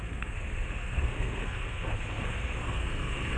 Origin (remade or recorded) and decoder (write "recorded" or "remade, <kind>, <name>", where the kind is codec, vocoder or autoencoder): remade, codec, SNAC